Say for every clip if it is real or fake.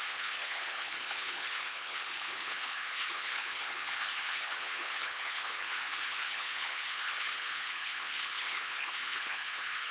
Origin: fake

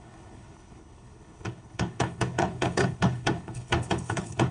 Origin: fake